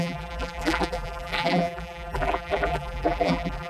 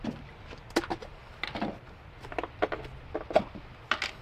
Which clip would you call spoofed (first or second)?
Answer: first